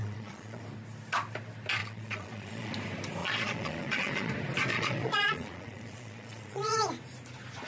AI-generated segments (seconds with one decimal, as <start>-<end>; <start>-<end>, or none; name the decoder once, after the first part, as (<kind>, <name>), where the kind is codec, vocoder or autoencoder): 0.0-0.6 (vocoder, Vocos); 1.8-2.7; 3.2-4.3; 4.7-6.8